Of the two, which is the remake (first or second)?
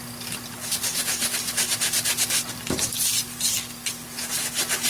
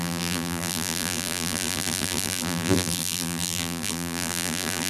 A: second